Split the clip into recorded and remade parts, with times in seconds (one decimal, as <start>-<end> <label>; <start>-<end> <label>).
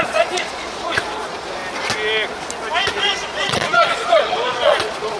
0.0-1.6 remade; 1.6-3.0 recorded; 3.0-5.2 remade